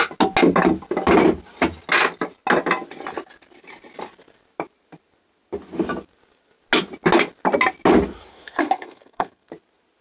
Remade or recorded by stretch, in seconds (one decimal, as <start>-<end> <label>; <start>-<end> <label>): 0.0-8.3 recorded; 8.3-9.5 remade; 9.5-10.0 recorded